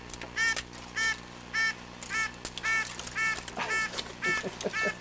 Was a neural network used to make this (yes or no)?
no